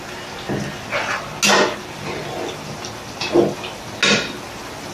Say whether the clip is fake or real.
real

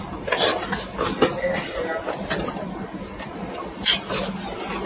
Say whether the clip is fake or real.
real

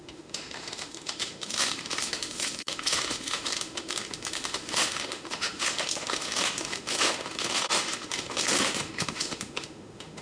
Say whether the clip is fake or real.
fake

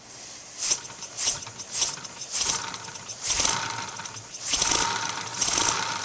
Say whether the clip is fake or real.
real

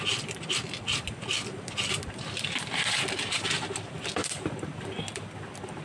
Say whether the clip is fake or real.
real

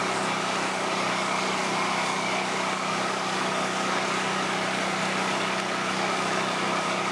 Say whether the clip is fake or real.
fake